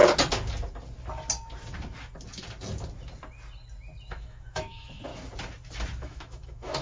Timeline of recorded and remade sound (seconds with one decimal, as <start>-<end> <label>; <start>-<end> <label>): 0.0-4.1 recorded; 4.1-5.1 remade; 5.1-6.0 recorded; 6.0-6.8 remade